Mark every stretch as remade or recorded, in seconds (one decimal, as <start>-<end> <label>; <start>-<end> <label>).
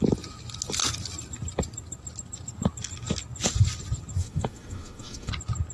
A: 0.0-4.2 recorded; 4.2-5.3 remade; 5.3-5.7 recorded